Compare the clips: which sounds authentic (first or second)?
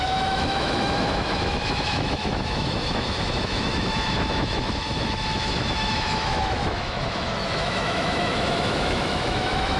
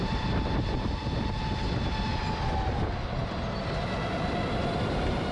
second